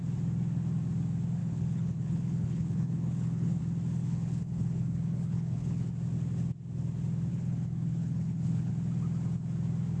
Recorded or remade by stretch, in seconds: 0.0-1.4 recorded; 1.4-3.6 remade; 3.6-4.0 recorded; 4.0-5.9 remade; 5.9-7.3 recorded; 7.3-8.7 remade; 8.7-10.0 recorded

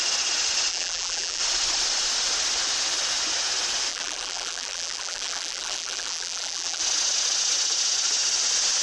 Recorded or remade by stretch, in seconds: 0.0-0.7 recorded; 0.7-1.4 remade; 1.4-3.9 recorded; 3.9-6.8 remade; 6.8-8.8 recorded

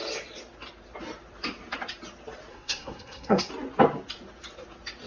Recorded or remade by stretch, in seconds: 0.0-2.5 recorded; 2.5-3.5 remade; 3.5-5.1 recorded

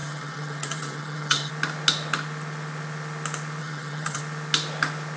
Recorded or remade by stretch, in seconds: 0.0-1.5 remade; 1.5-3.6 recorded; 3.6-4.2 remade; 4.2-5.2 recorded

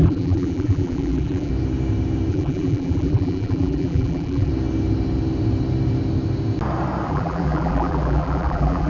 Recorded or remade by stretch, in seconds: 0.0-1.5 remade; 1.5-2.3 recorded; 2.3-4.5 remade; 4.5-7.1 recorded; 7.1-8.9 remade